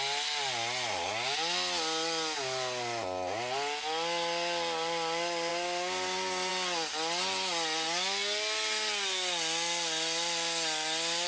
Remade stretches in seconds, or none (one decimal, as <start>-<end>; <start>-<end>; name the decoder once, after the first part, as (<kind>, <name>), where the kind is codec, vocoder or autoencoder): none